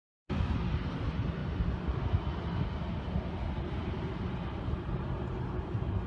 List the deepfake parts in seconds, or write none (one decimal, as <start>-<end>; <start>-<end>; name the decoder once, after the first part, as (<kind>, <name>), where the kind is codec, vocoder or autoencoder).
none